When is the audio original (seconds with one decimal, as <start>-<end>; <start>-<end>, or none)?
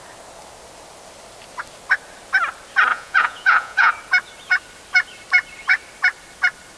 0.0-2.9; 3.9-6.8